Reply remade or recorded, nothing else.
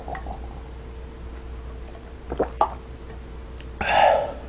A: recorded